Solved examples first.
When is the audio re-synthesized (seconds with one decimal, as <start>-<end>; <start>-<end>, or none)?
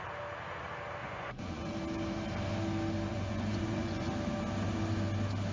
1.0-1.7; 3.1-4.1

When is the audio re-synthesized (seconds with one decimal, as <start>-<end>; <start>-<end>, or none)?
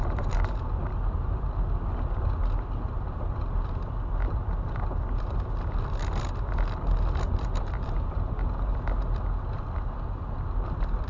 none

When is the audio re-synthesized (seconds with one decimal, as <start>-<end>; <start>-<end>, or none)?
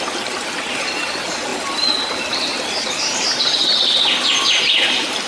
none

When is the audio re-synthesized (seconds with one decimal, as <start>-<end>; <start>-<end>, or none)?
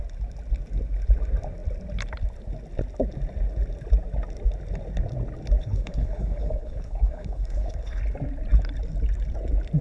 5.6-8.0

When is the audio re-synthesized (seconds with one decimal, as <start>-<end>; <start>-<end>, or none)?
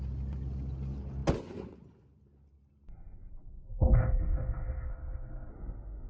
3.7-5.5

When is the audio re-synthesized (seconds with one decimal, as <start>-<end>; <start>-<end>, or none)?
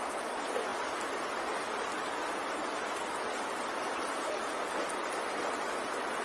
none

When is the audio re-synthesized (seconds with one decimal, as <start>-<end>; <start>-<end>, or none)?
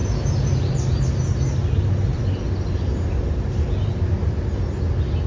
none